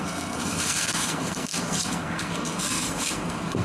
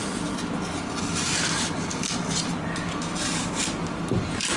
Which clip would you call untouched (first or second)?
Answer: second